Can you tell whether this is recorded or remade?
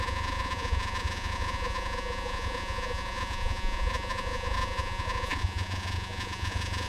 remade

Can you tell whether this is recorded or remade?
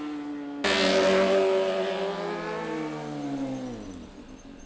recorded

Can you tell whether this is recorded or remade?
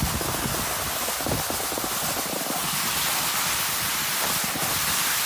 recorded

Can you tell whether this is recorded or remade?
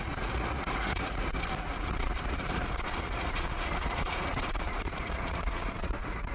remade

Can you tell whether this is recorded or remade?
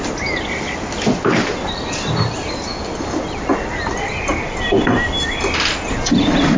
recorded